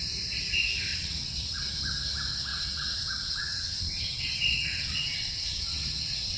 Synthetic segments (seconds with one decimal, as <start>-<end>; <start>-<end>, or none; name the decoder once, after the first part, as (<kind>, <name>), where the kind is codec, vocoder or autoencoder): 0.9-1.6 (vocoder, WaveNeXt); 2.5-6.4